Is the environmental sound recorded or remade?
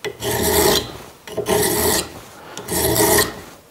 recorded